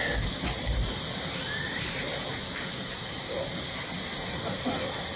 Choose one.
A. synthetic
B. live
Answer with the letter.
B